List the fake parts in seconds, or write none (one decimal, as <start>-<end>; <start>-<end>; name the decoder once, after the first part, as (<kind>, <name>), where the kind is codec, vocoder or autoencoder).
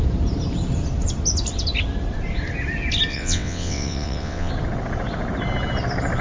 3.1-4.5 (vocoder, WaveNeXt)